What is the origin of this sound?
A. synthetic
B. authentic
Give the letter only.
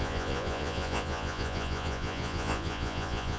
A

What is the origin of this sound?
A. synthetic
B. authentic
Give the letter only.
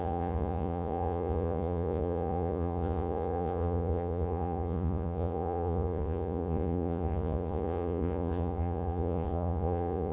A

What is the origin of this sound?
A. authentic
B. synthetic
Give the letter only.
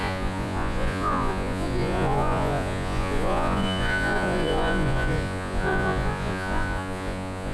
B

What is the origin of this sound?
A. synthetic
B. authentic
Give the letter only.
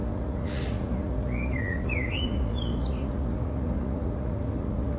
A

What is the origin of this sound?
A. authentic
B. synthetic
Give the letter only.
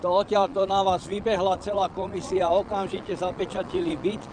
B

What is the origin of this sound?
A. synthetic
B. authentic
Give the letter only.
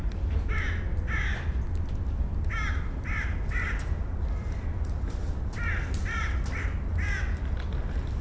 B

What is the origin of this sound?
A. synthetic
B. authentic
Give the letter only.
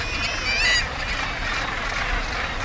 B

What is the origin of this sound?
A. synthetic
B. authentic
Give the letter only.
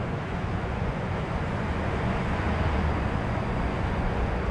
A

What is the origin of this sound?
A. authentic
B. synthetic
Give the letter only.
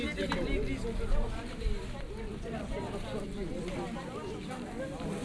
A